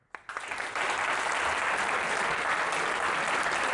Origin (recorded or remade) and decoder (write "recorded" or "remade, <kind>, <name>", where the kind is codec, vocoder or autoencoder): recorded